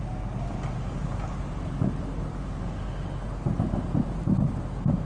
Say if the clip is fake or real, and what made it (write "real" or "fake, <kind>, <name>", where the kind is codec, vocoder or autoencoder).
real